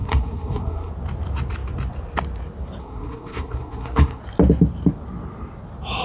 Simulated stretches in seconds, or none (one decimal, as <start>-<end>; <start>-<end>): 0.0-0.9; 2.8-4.2